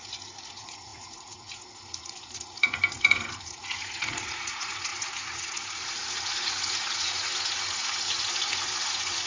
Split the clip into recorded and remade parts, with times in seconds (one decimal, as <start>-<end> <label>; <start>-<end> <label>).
0.0-9.3 remade